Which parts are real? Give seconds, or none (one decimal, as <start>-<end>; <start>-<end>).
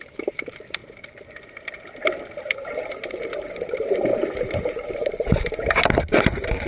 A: 0.8-2.4